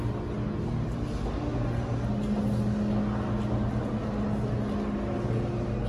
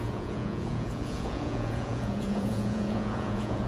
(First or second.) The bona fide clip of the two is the first